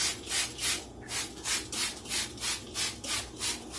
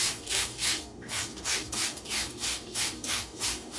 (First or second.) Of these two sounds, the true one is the first